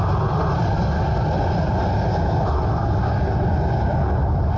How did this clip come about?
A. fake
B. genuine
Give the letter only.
B